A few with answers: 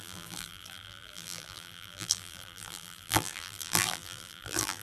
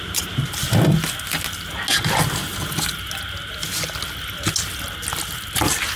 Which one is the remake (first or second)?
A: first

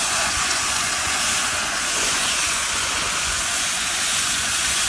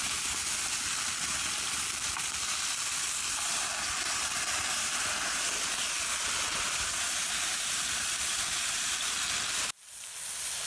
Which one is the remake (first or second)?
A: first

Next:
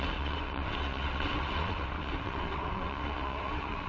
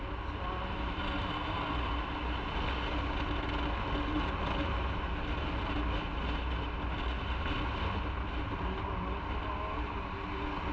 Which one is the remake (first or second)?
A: first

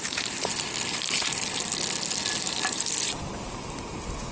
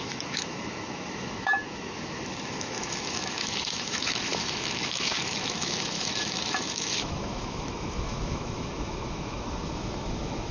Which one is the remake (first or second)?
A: second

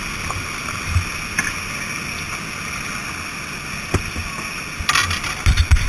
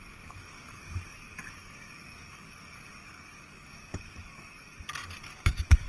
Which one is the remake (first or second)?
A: second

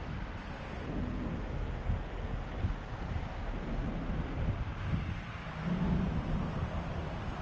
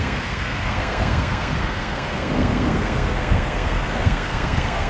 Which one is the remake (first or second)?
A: second